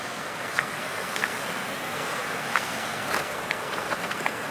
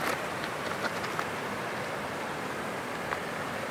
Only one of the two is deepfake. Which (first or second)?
first